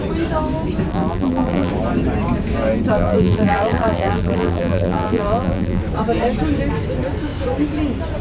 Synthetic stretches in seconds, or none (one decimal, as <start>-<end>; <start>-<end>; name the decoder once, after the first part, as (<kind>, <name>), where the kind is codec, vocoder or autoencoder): 0.9-1.7 (vocoder, BigVGAN v2); 2.9-5.8

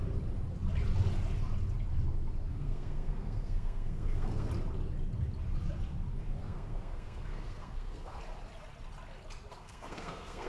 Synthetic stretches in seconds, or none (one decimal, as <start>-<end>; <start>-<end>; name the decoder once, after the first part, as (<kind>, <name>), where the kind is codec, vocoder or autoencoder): 2.5-4.5 (codec, SNAC); 6.4-8.2; 9.5-10.5

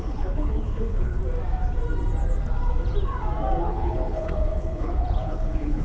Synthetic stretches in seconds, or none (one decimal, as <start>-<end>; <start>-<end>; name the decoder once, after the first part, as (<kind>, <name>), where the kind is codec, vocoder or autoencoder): 0.0-1.2 (codec, HILCodec); 3.6-5.8

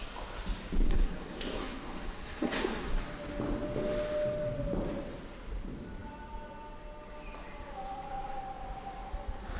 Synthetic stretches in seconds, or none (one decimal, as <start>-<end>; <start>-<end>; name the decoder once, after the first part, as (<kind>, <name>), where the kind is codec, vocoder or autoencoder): 0.9-2.9 (codec, SNAC)

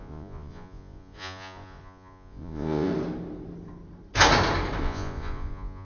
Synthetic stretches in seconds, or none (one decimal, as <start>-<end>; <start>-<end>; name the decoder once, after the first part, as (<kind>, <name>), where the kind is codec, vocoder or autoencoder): 0.0-2.9 (vocoder, Vocos); 4.8-5.8

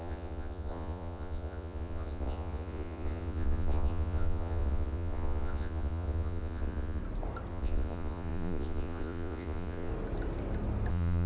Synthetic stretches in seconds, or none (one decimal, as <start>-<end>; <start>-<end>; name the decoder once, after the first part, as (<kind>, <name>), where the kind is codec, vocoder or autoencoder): 0.0-7.0 (vocoder, Vocos); 7.5-9.9; 10.9-11.3

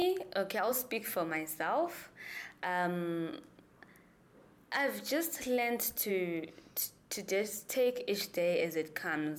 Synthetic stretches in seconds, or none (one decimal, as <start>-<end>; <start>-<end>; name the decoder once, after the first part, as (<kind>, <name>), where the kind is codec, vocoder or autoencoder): none

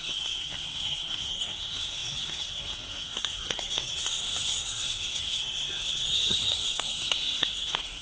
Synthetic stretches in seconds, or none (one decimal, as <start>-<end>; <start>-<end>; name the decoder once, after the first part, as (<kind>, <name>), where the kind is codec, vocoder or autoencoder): 0.0-8.0 (codec, SNAC)